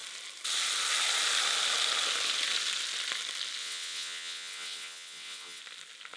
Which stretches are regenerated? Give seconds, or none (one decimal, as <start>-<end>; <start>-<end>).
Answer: 3.6-5.6